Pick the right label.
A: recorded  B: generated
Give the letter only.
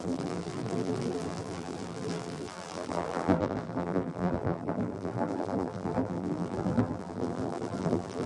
B